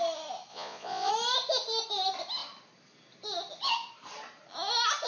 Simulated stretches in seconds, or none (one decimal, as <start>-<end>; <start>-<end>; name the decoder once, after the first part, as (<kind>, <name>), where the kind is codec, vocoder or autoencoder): 0.5-1.1 (vocoder, Vocos)